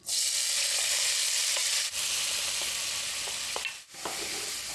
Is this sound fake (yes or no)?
no